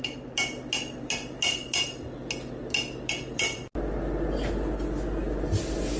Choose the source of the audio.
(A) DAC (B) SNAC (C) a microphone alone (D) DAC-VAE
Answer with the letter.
C